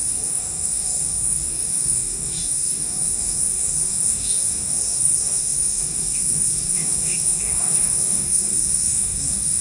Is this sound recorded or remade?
remade